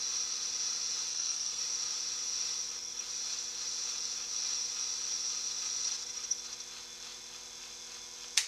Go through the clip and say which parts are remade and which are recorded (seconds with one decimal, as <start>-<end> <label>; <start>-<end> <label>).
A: 0.0-1.1 recorded; 1.1-1.6 remade; 1.6-8.5 recorded